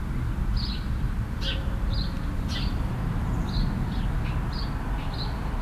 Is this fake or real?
real